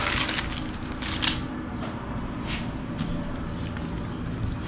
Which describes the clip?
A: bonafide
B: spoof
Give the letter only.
A